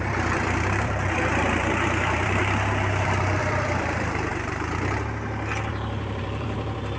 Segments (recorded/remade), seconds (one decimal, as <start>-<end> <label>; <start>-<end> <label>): 0.0-4.3 remade; 4.3-5.7 recorded; 5.7-7.0 remade